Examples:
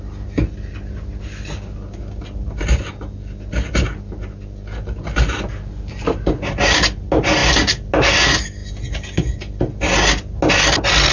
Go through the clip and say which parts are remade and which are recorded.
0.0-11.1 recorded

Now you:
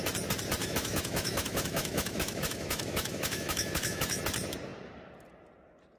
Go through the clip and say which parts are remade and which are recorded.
0.0-0.6 recorded; 0.6-4.2 remade; 4.2-6.0 recorded

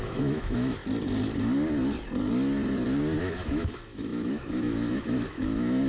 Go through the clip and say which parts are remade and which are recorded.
0.0-0.8 remade; 0.8-3.2 recorded; 3.2-5.9 remade

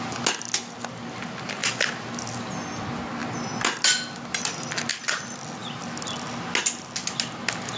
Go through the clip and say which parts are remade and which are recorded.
0.0-7.8 recorded

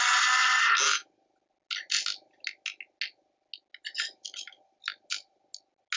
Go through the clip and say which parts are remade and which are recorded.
0.0-6.0 recorded

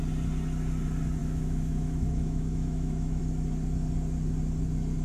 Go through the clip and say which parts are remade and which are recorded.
0.0-1.2 recorded; 1.2-3.2 remade; 3.2-5.0 recorded